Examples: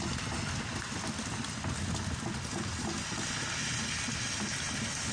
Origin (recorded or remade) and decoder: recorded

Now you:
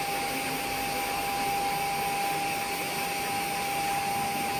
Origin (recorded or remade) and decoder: recorded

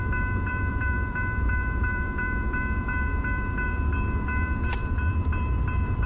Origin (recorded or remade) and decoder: remade, vocoder, BigVGAN v2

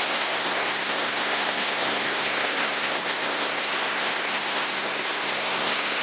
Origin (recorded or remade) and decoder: remade, codec, SNAC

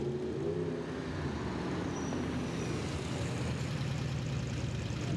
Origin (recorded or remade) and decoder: recorded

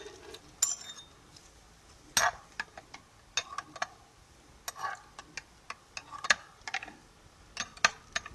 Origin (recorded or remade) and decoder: recorded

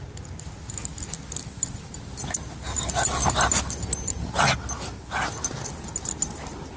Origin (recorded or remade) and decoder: recorded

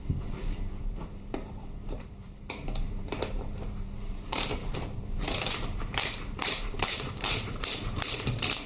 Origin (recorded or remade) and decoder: remade, vocoder, BigVGAN v2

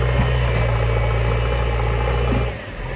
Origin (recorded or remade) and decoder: recorded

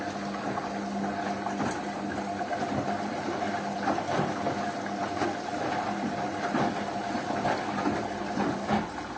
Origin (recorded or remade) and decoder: recorded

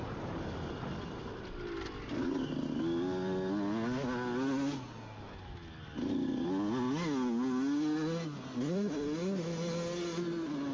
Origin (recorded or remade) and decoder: recorded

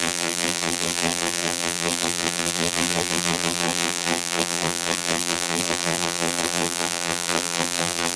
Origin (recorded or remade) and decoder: remade, vocoder, BigVGAN v2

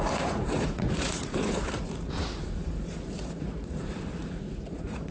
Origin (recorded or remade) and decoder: remade, vocoder, Vocos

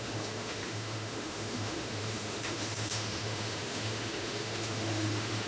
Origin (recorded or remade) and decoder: remade, autoencoder, DAC-VAE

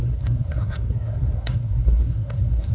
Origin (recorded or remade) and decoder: remade, codec, SNAC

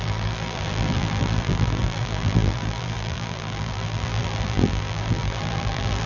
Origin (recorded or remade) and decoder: remade, vocoder, BigVGAN v2